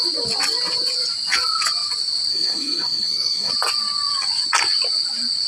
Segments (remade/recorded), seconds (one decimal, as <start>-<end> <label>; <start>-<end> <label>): 0.0-2.3 recorded; 2.3-3.5 remade; 3.5-5.5 recorded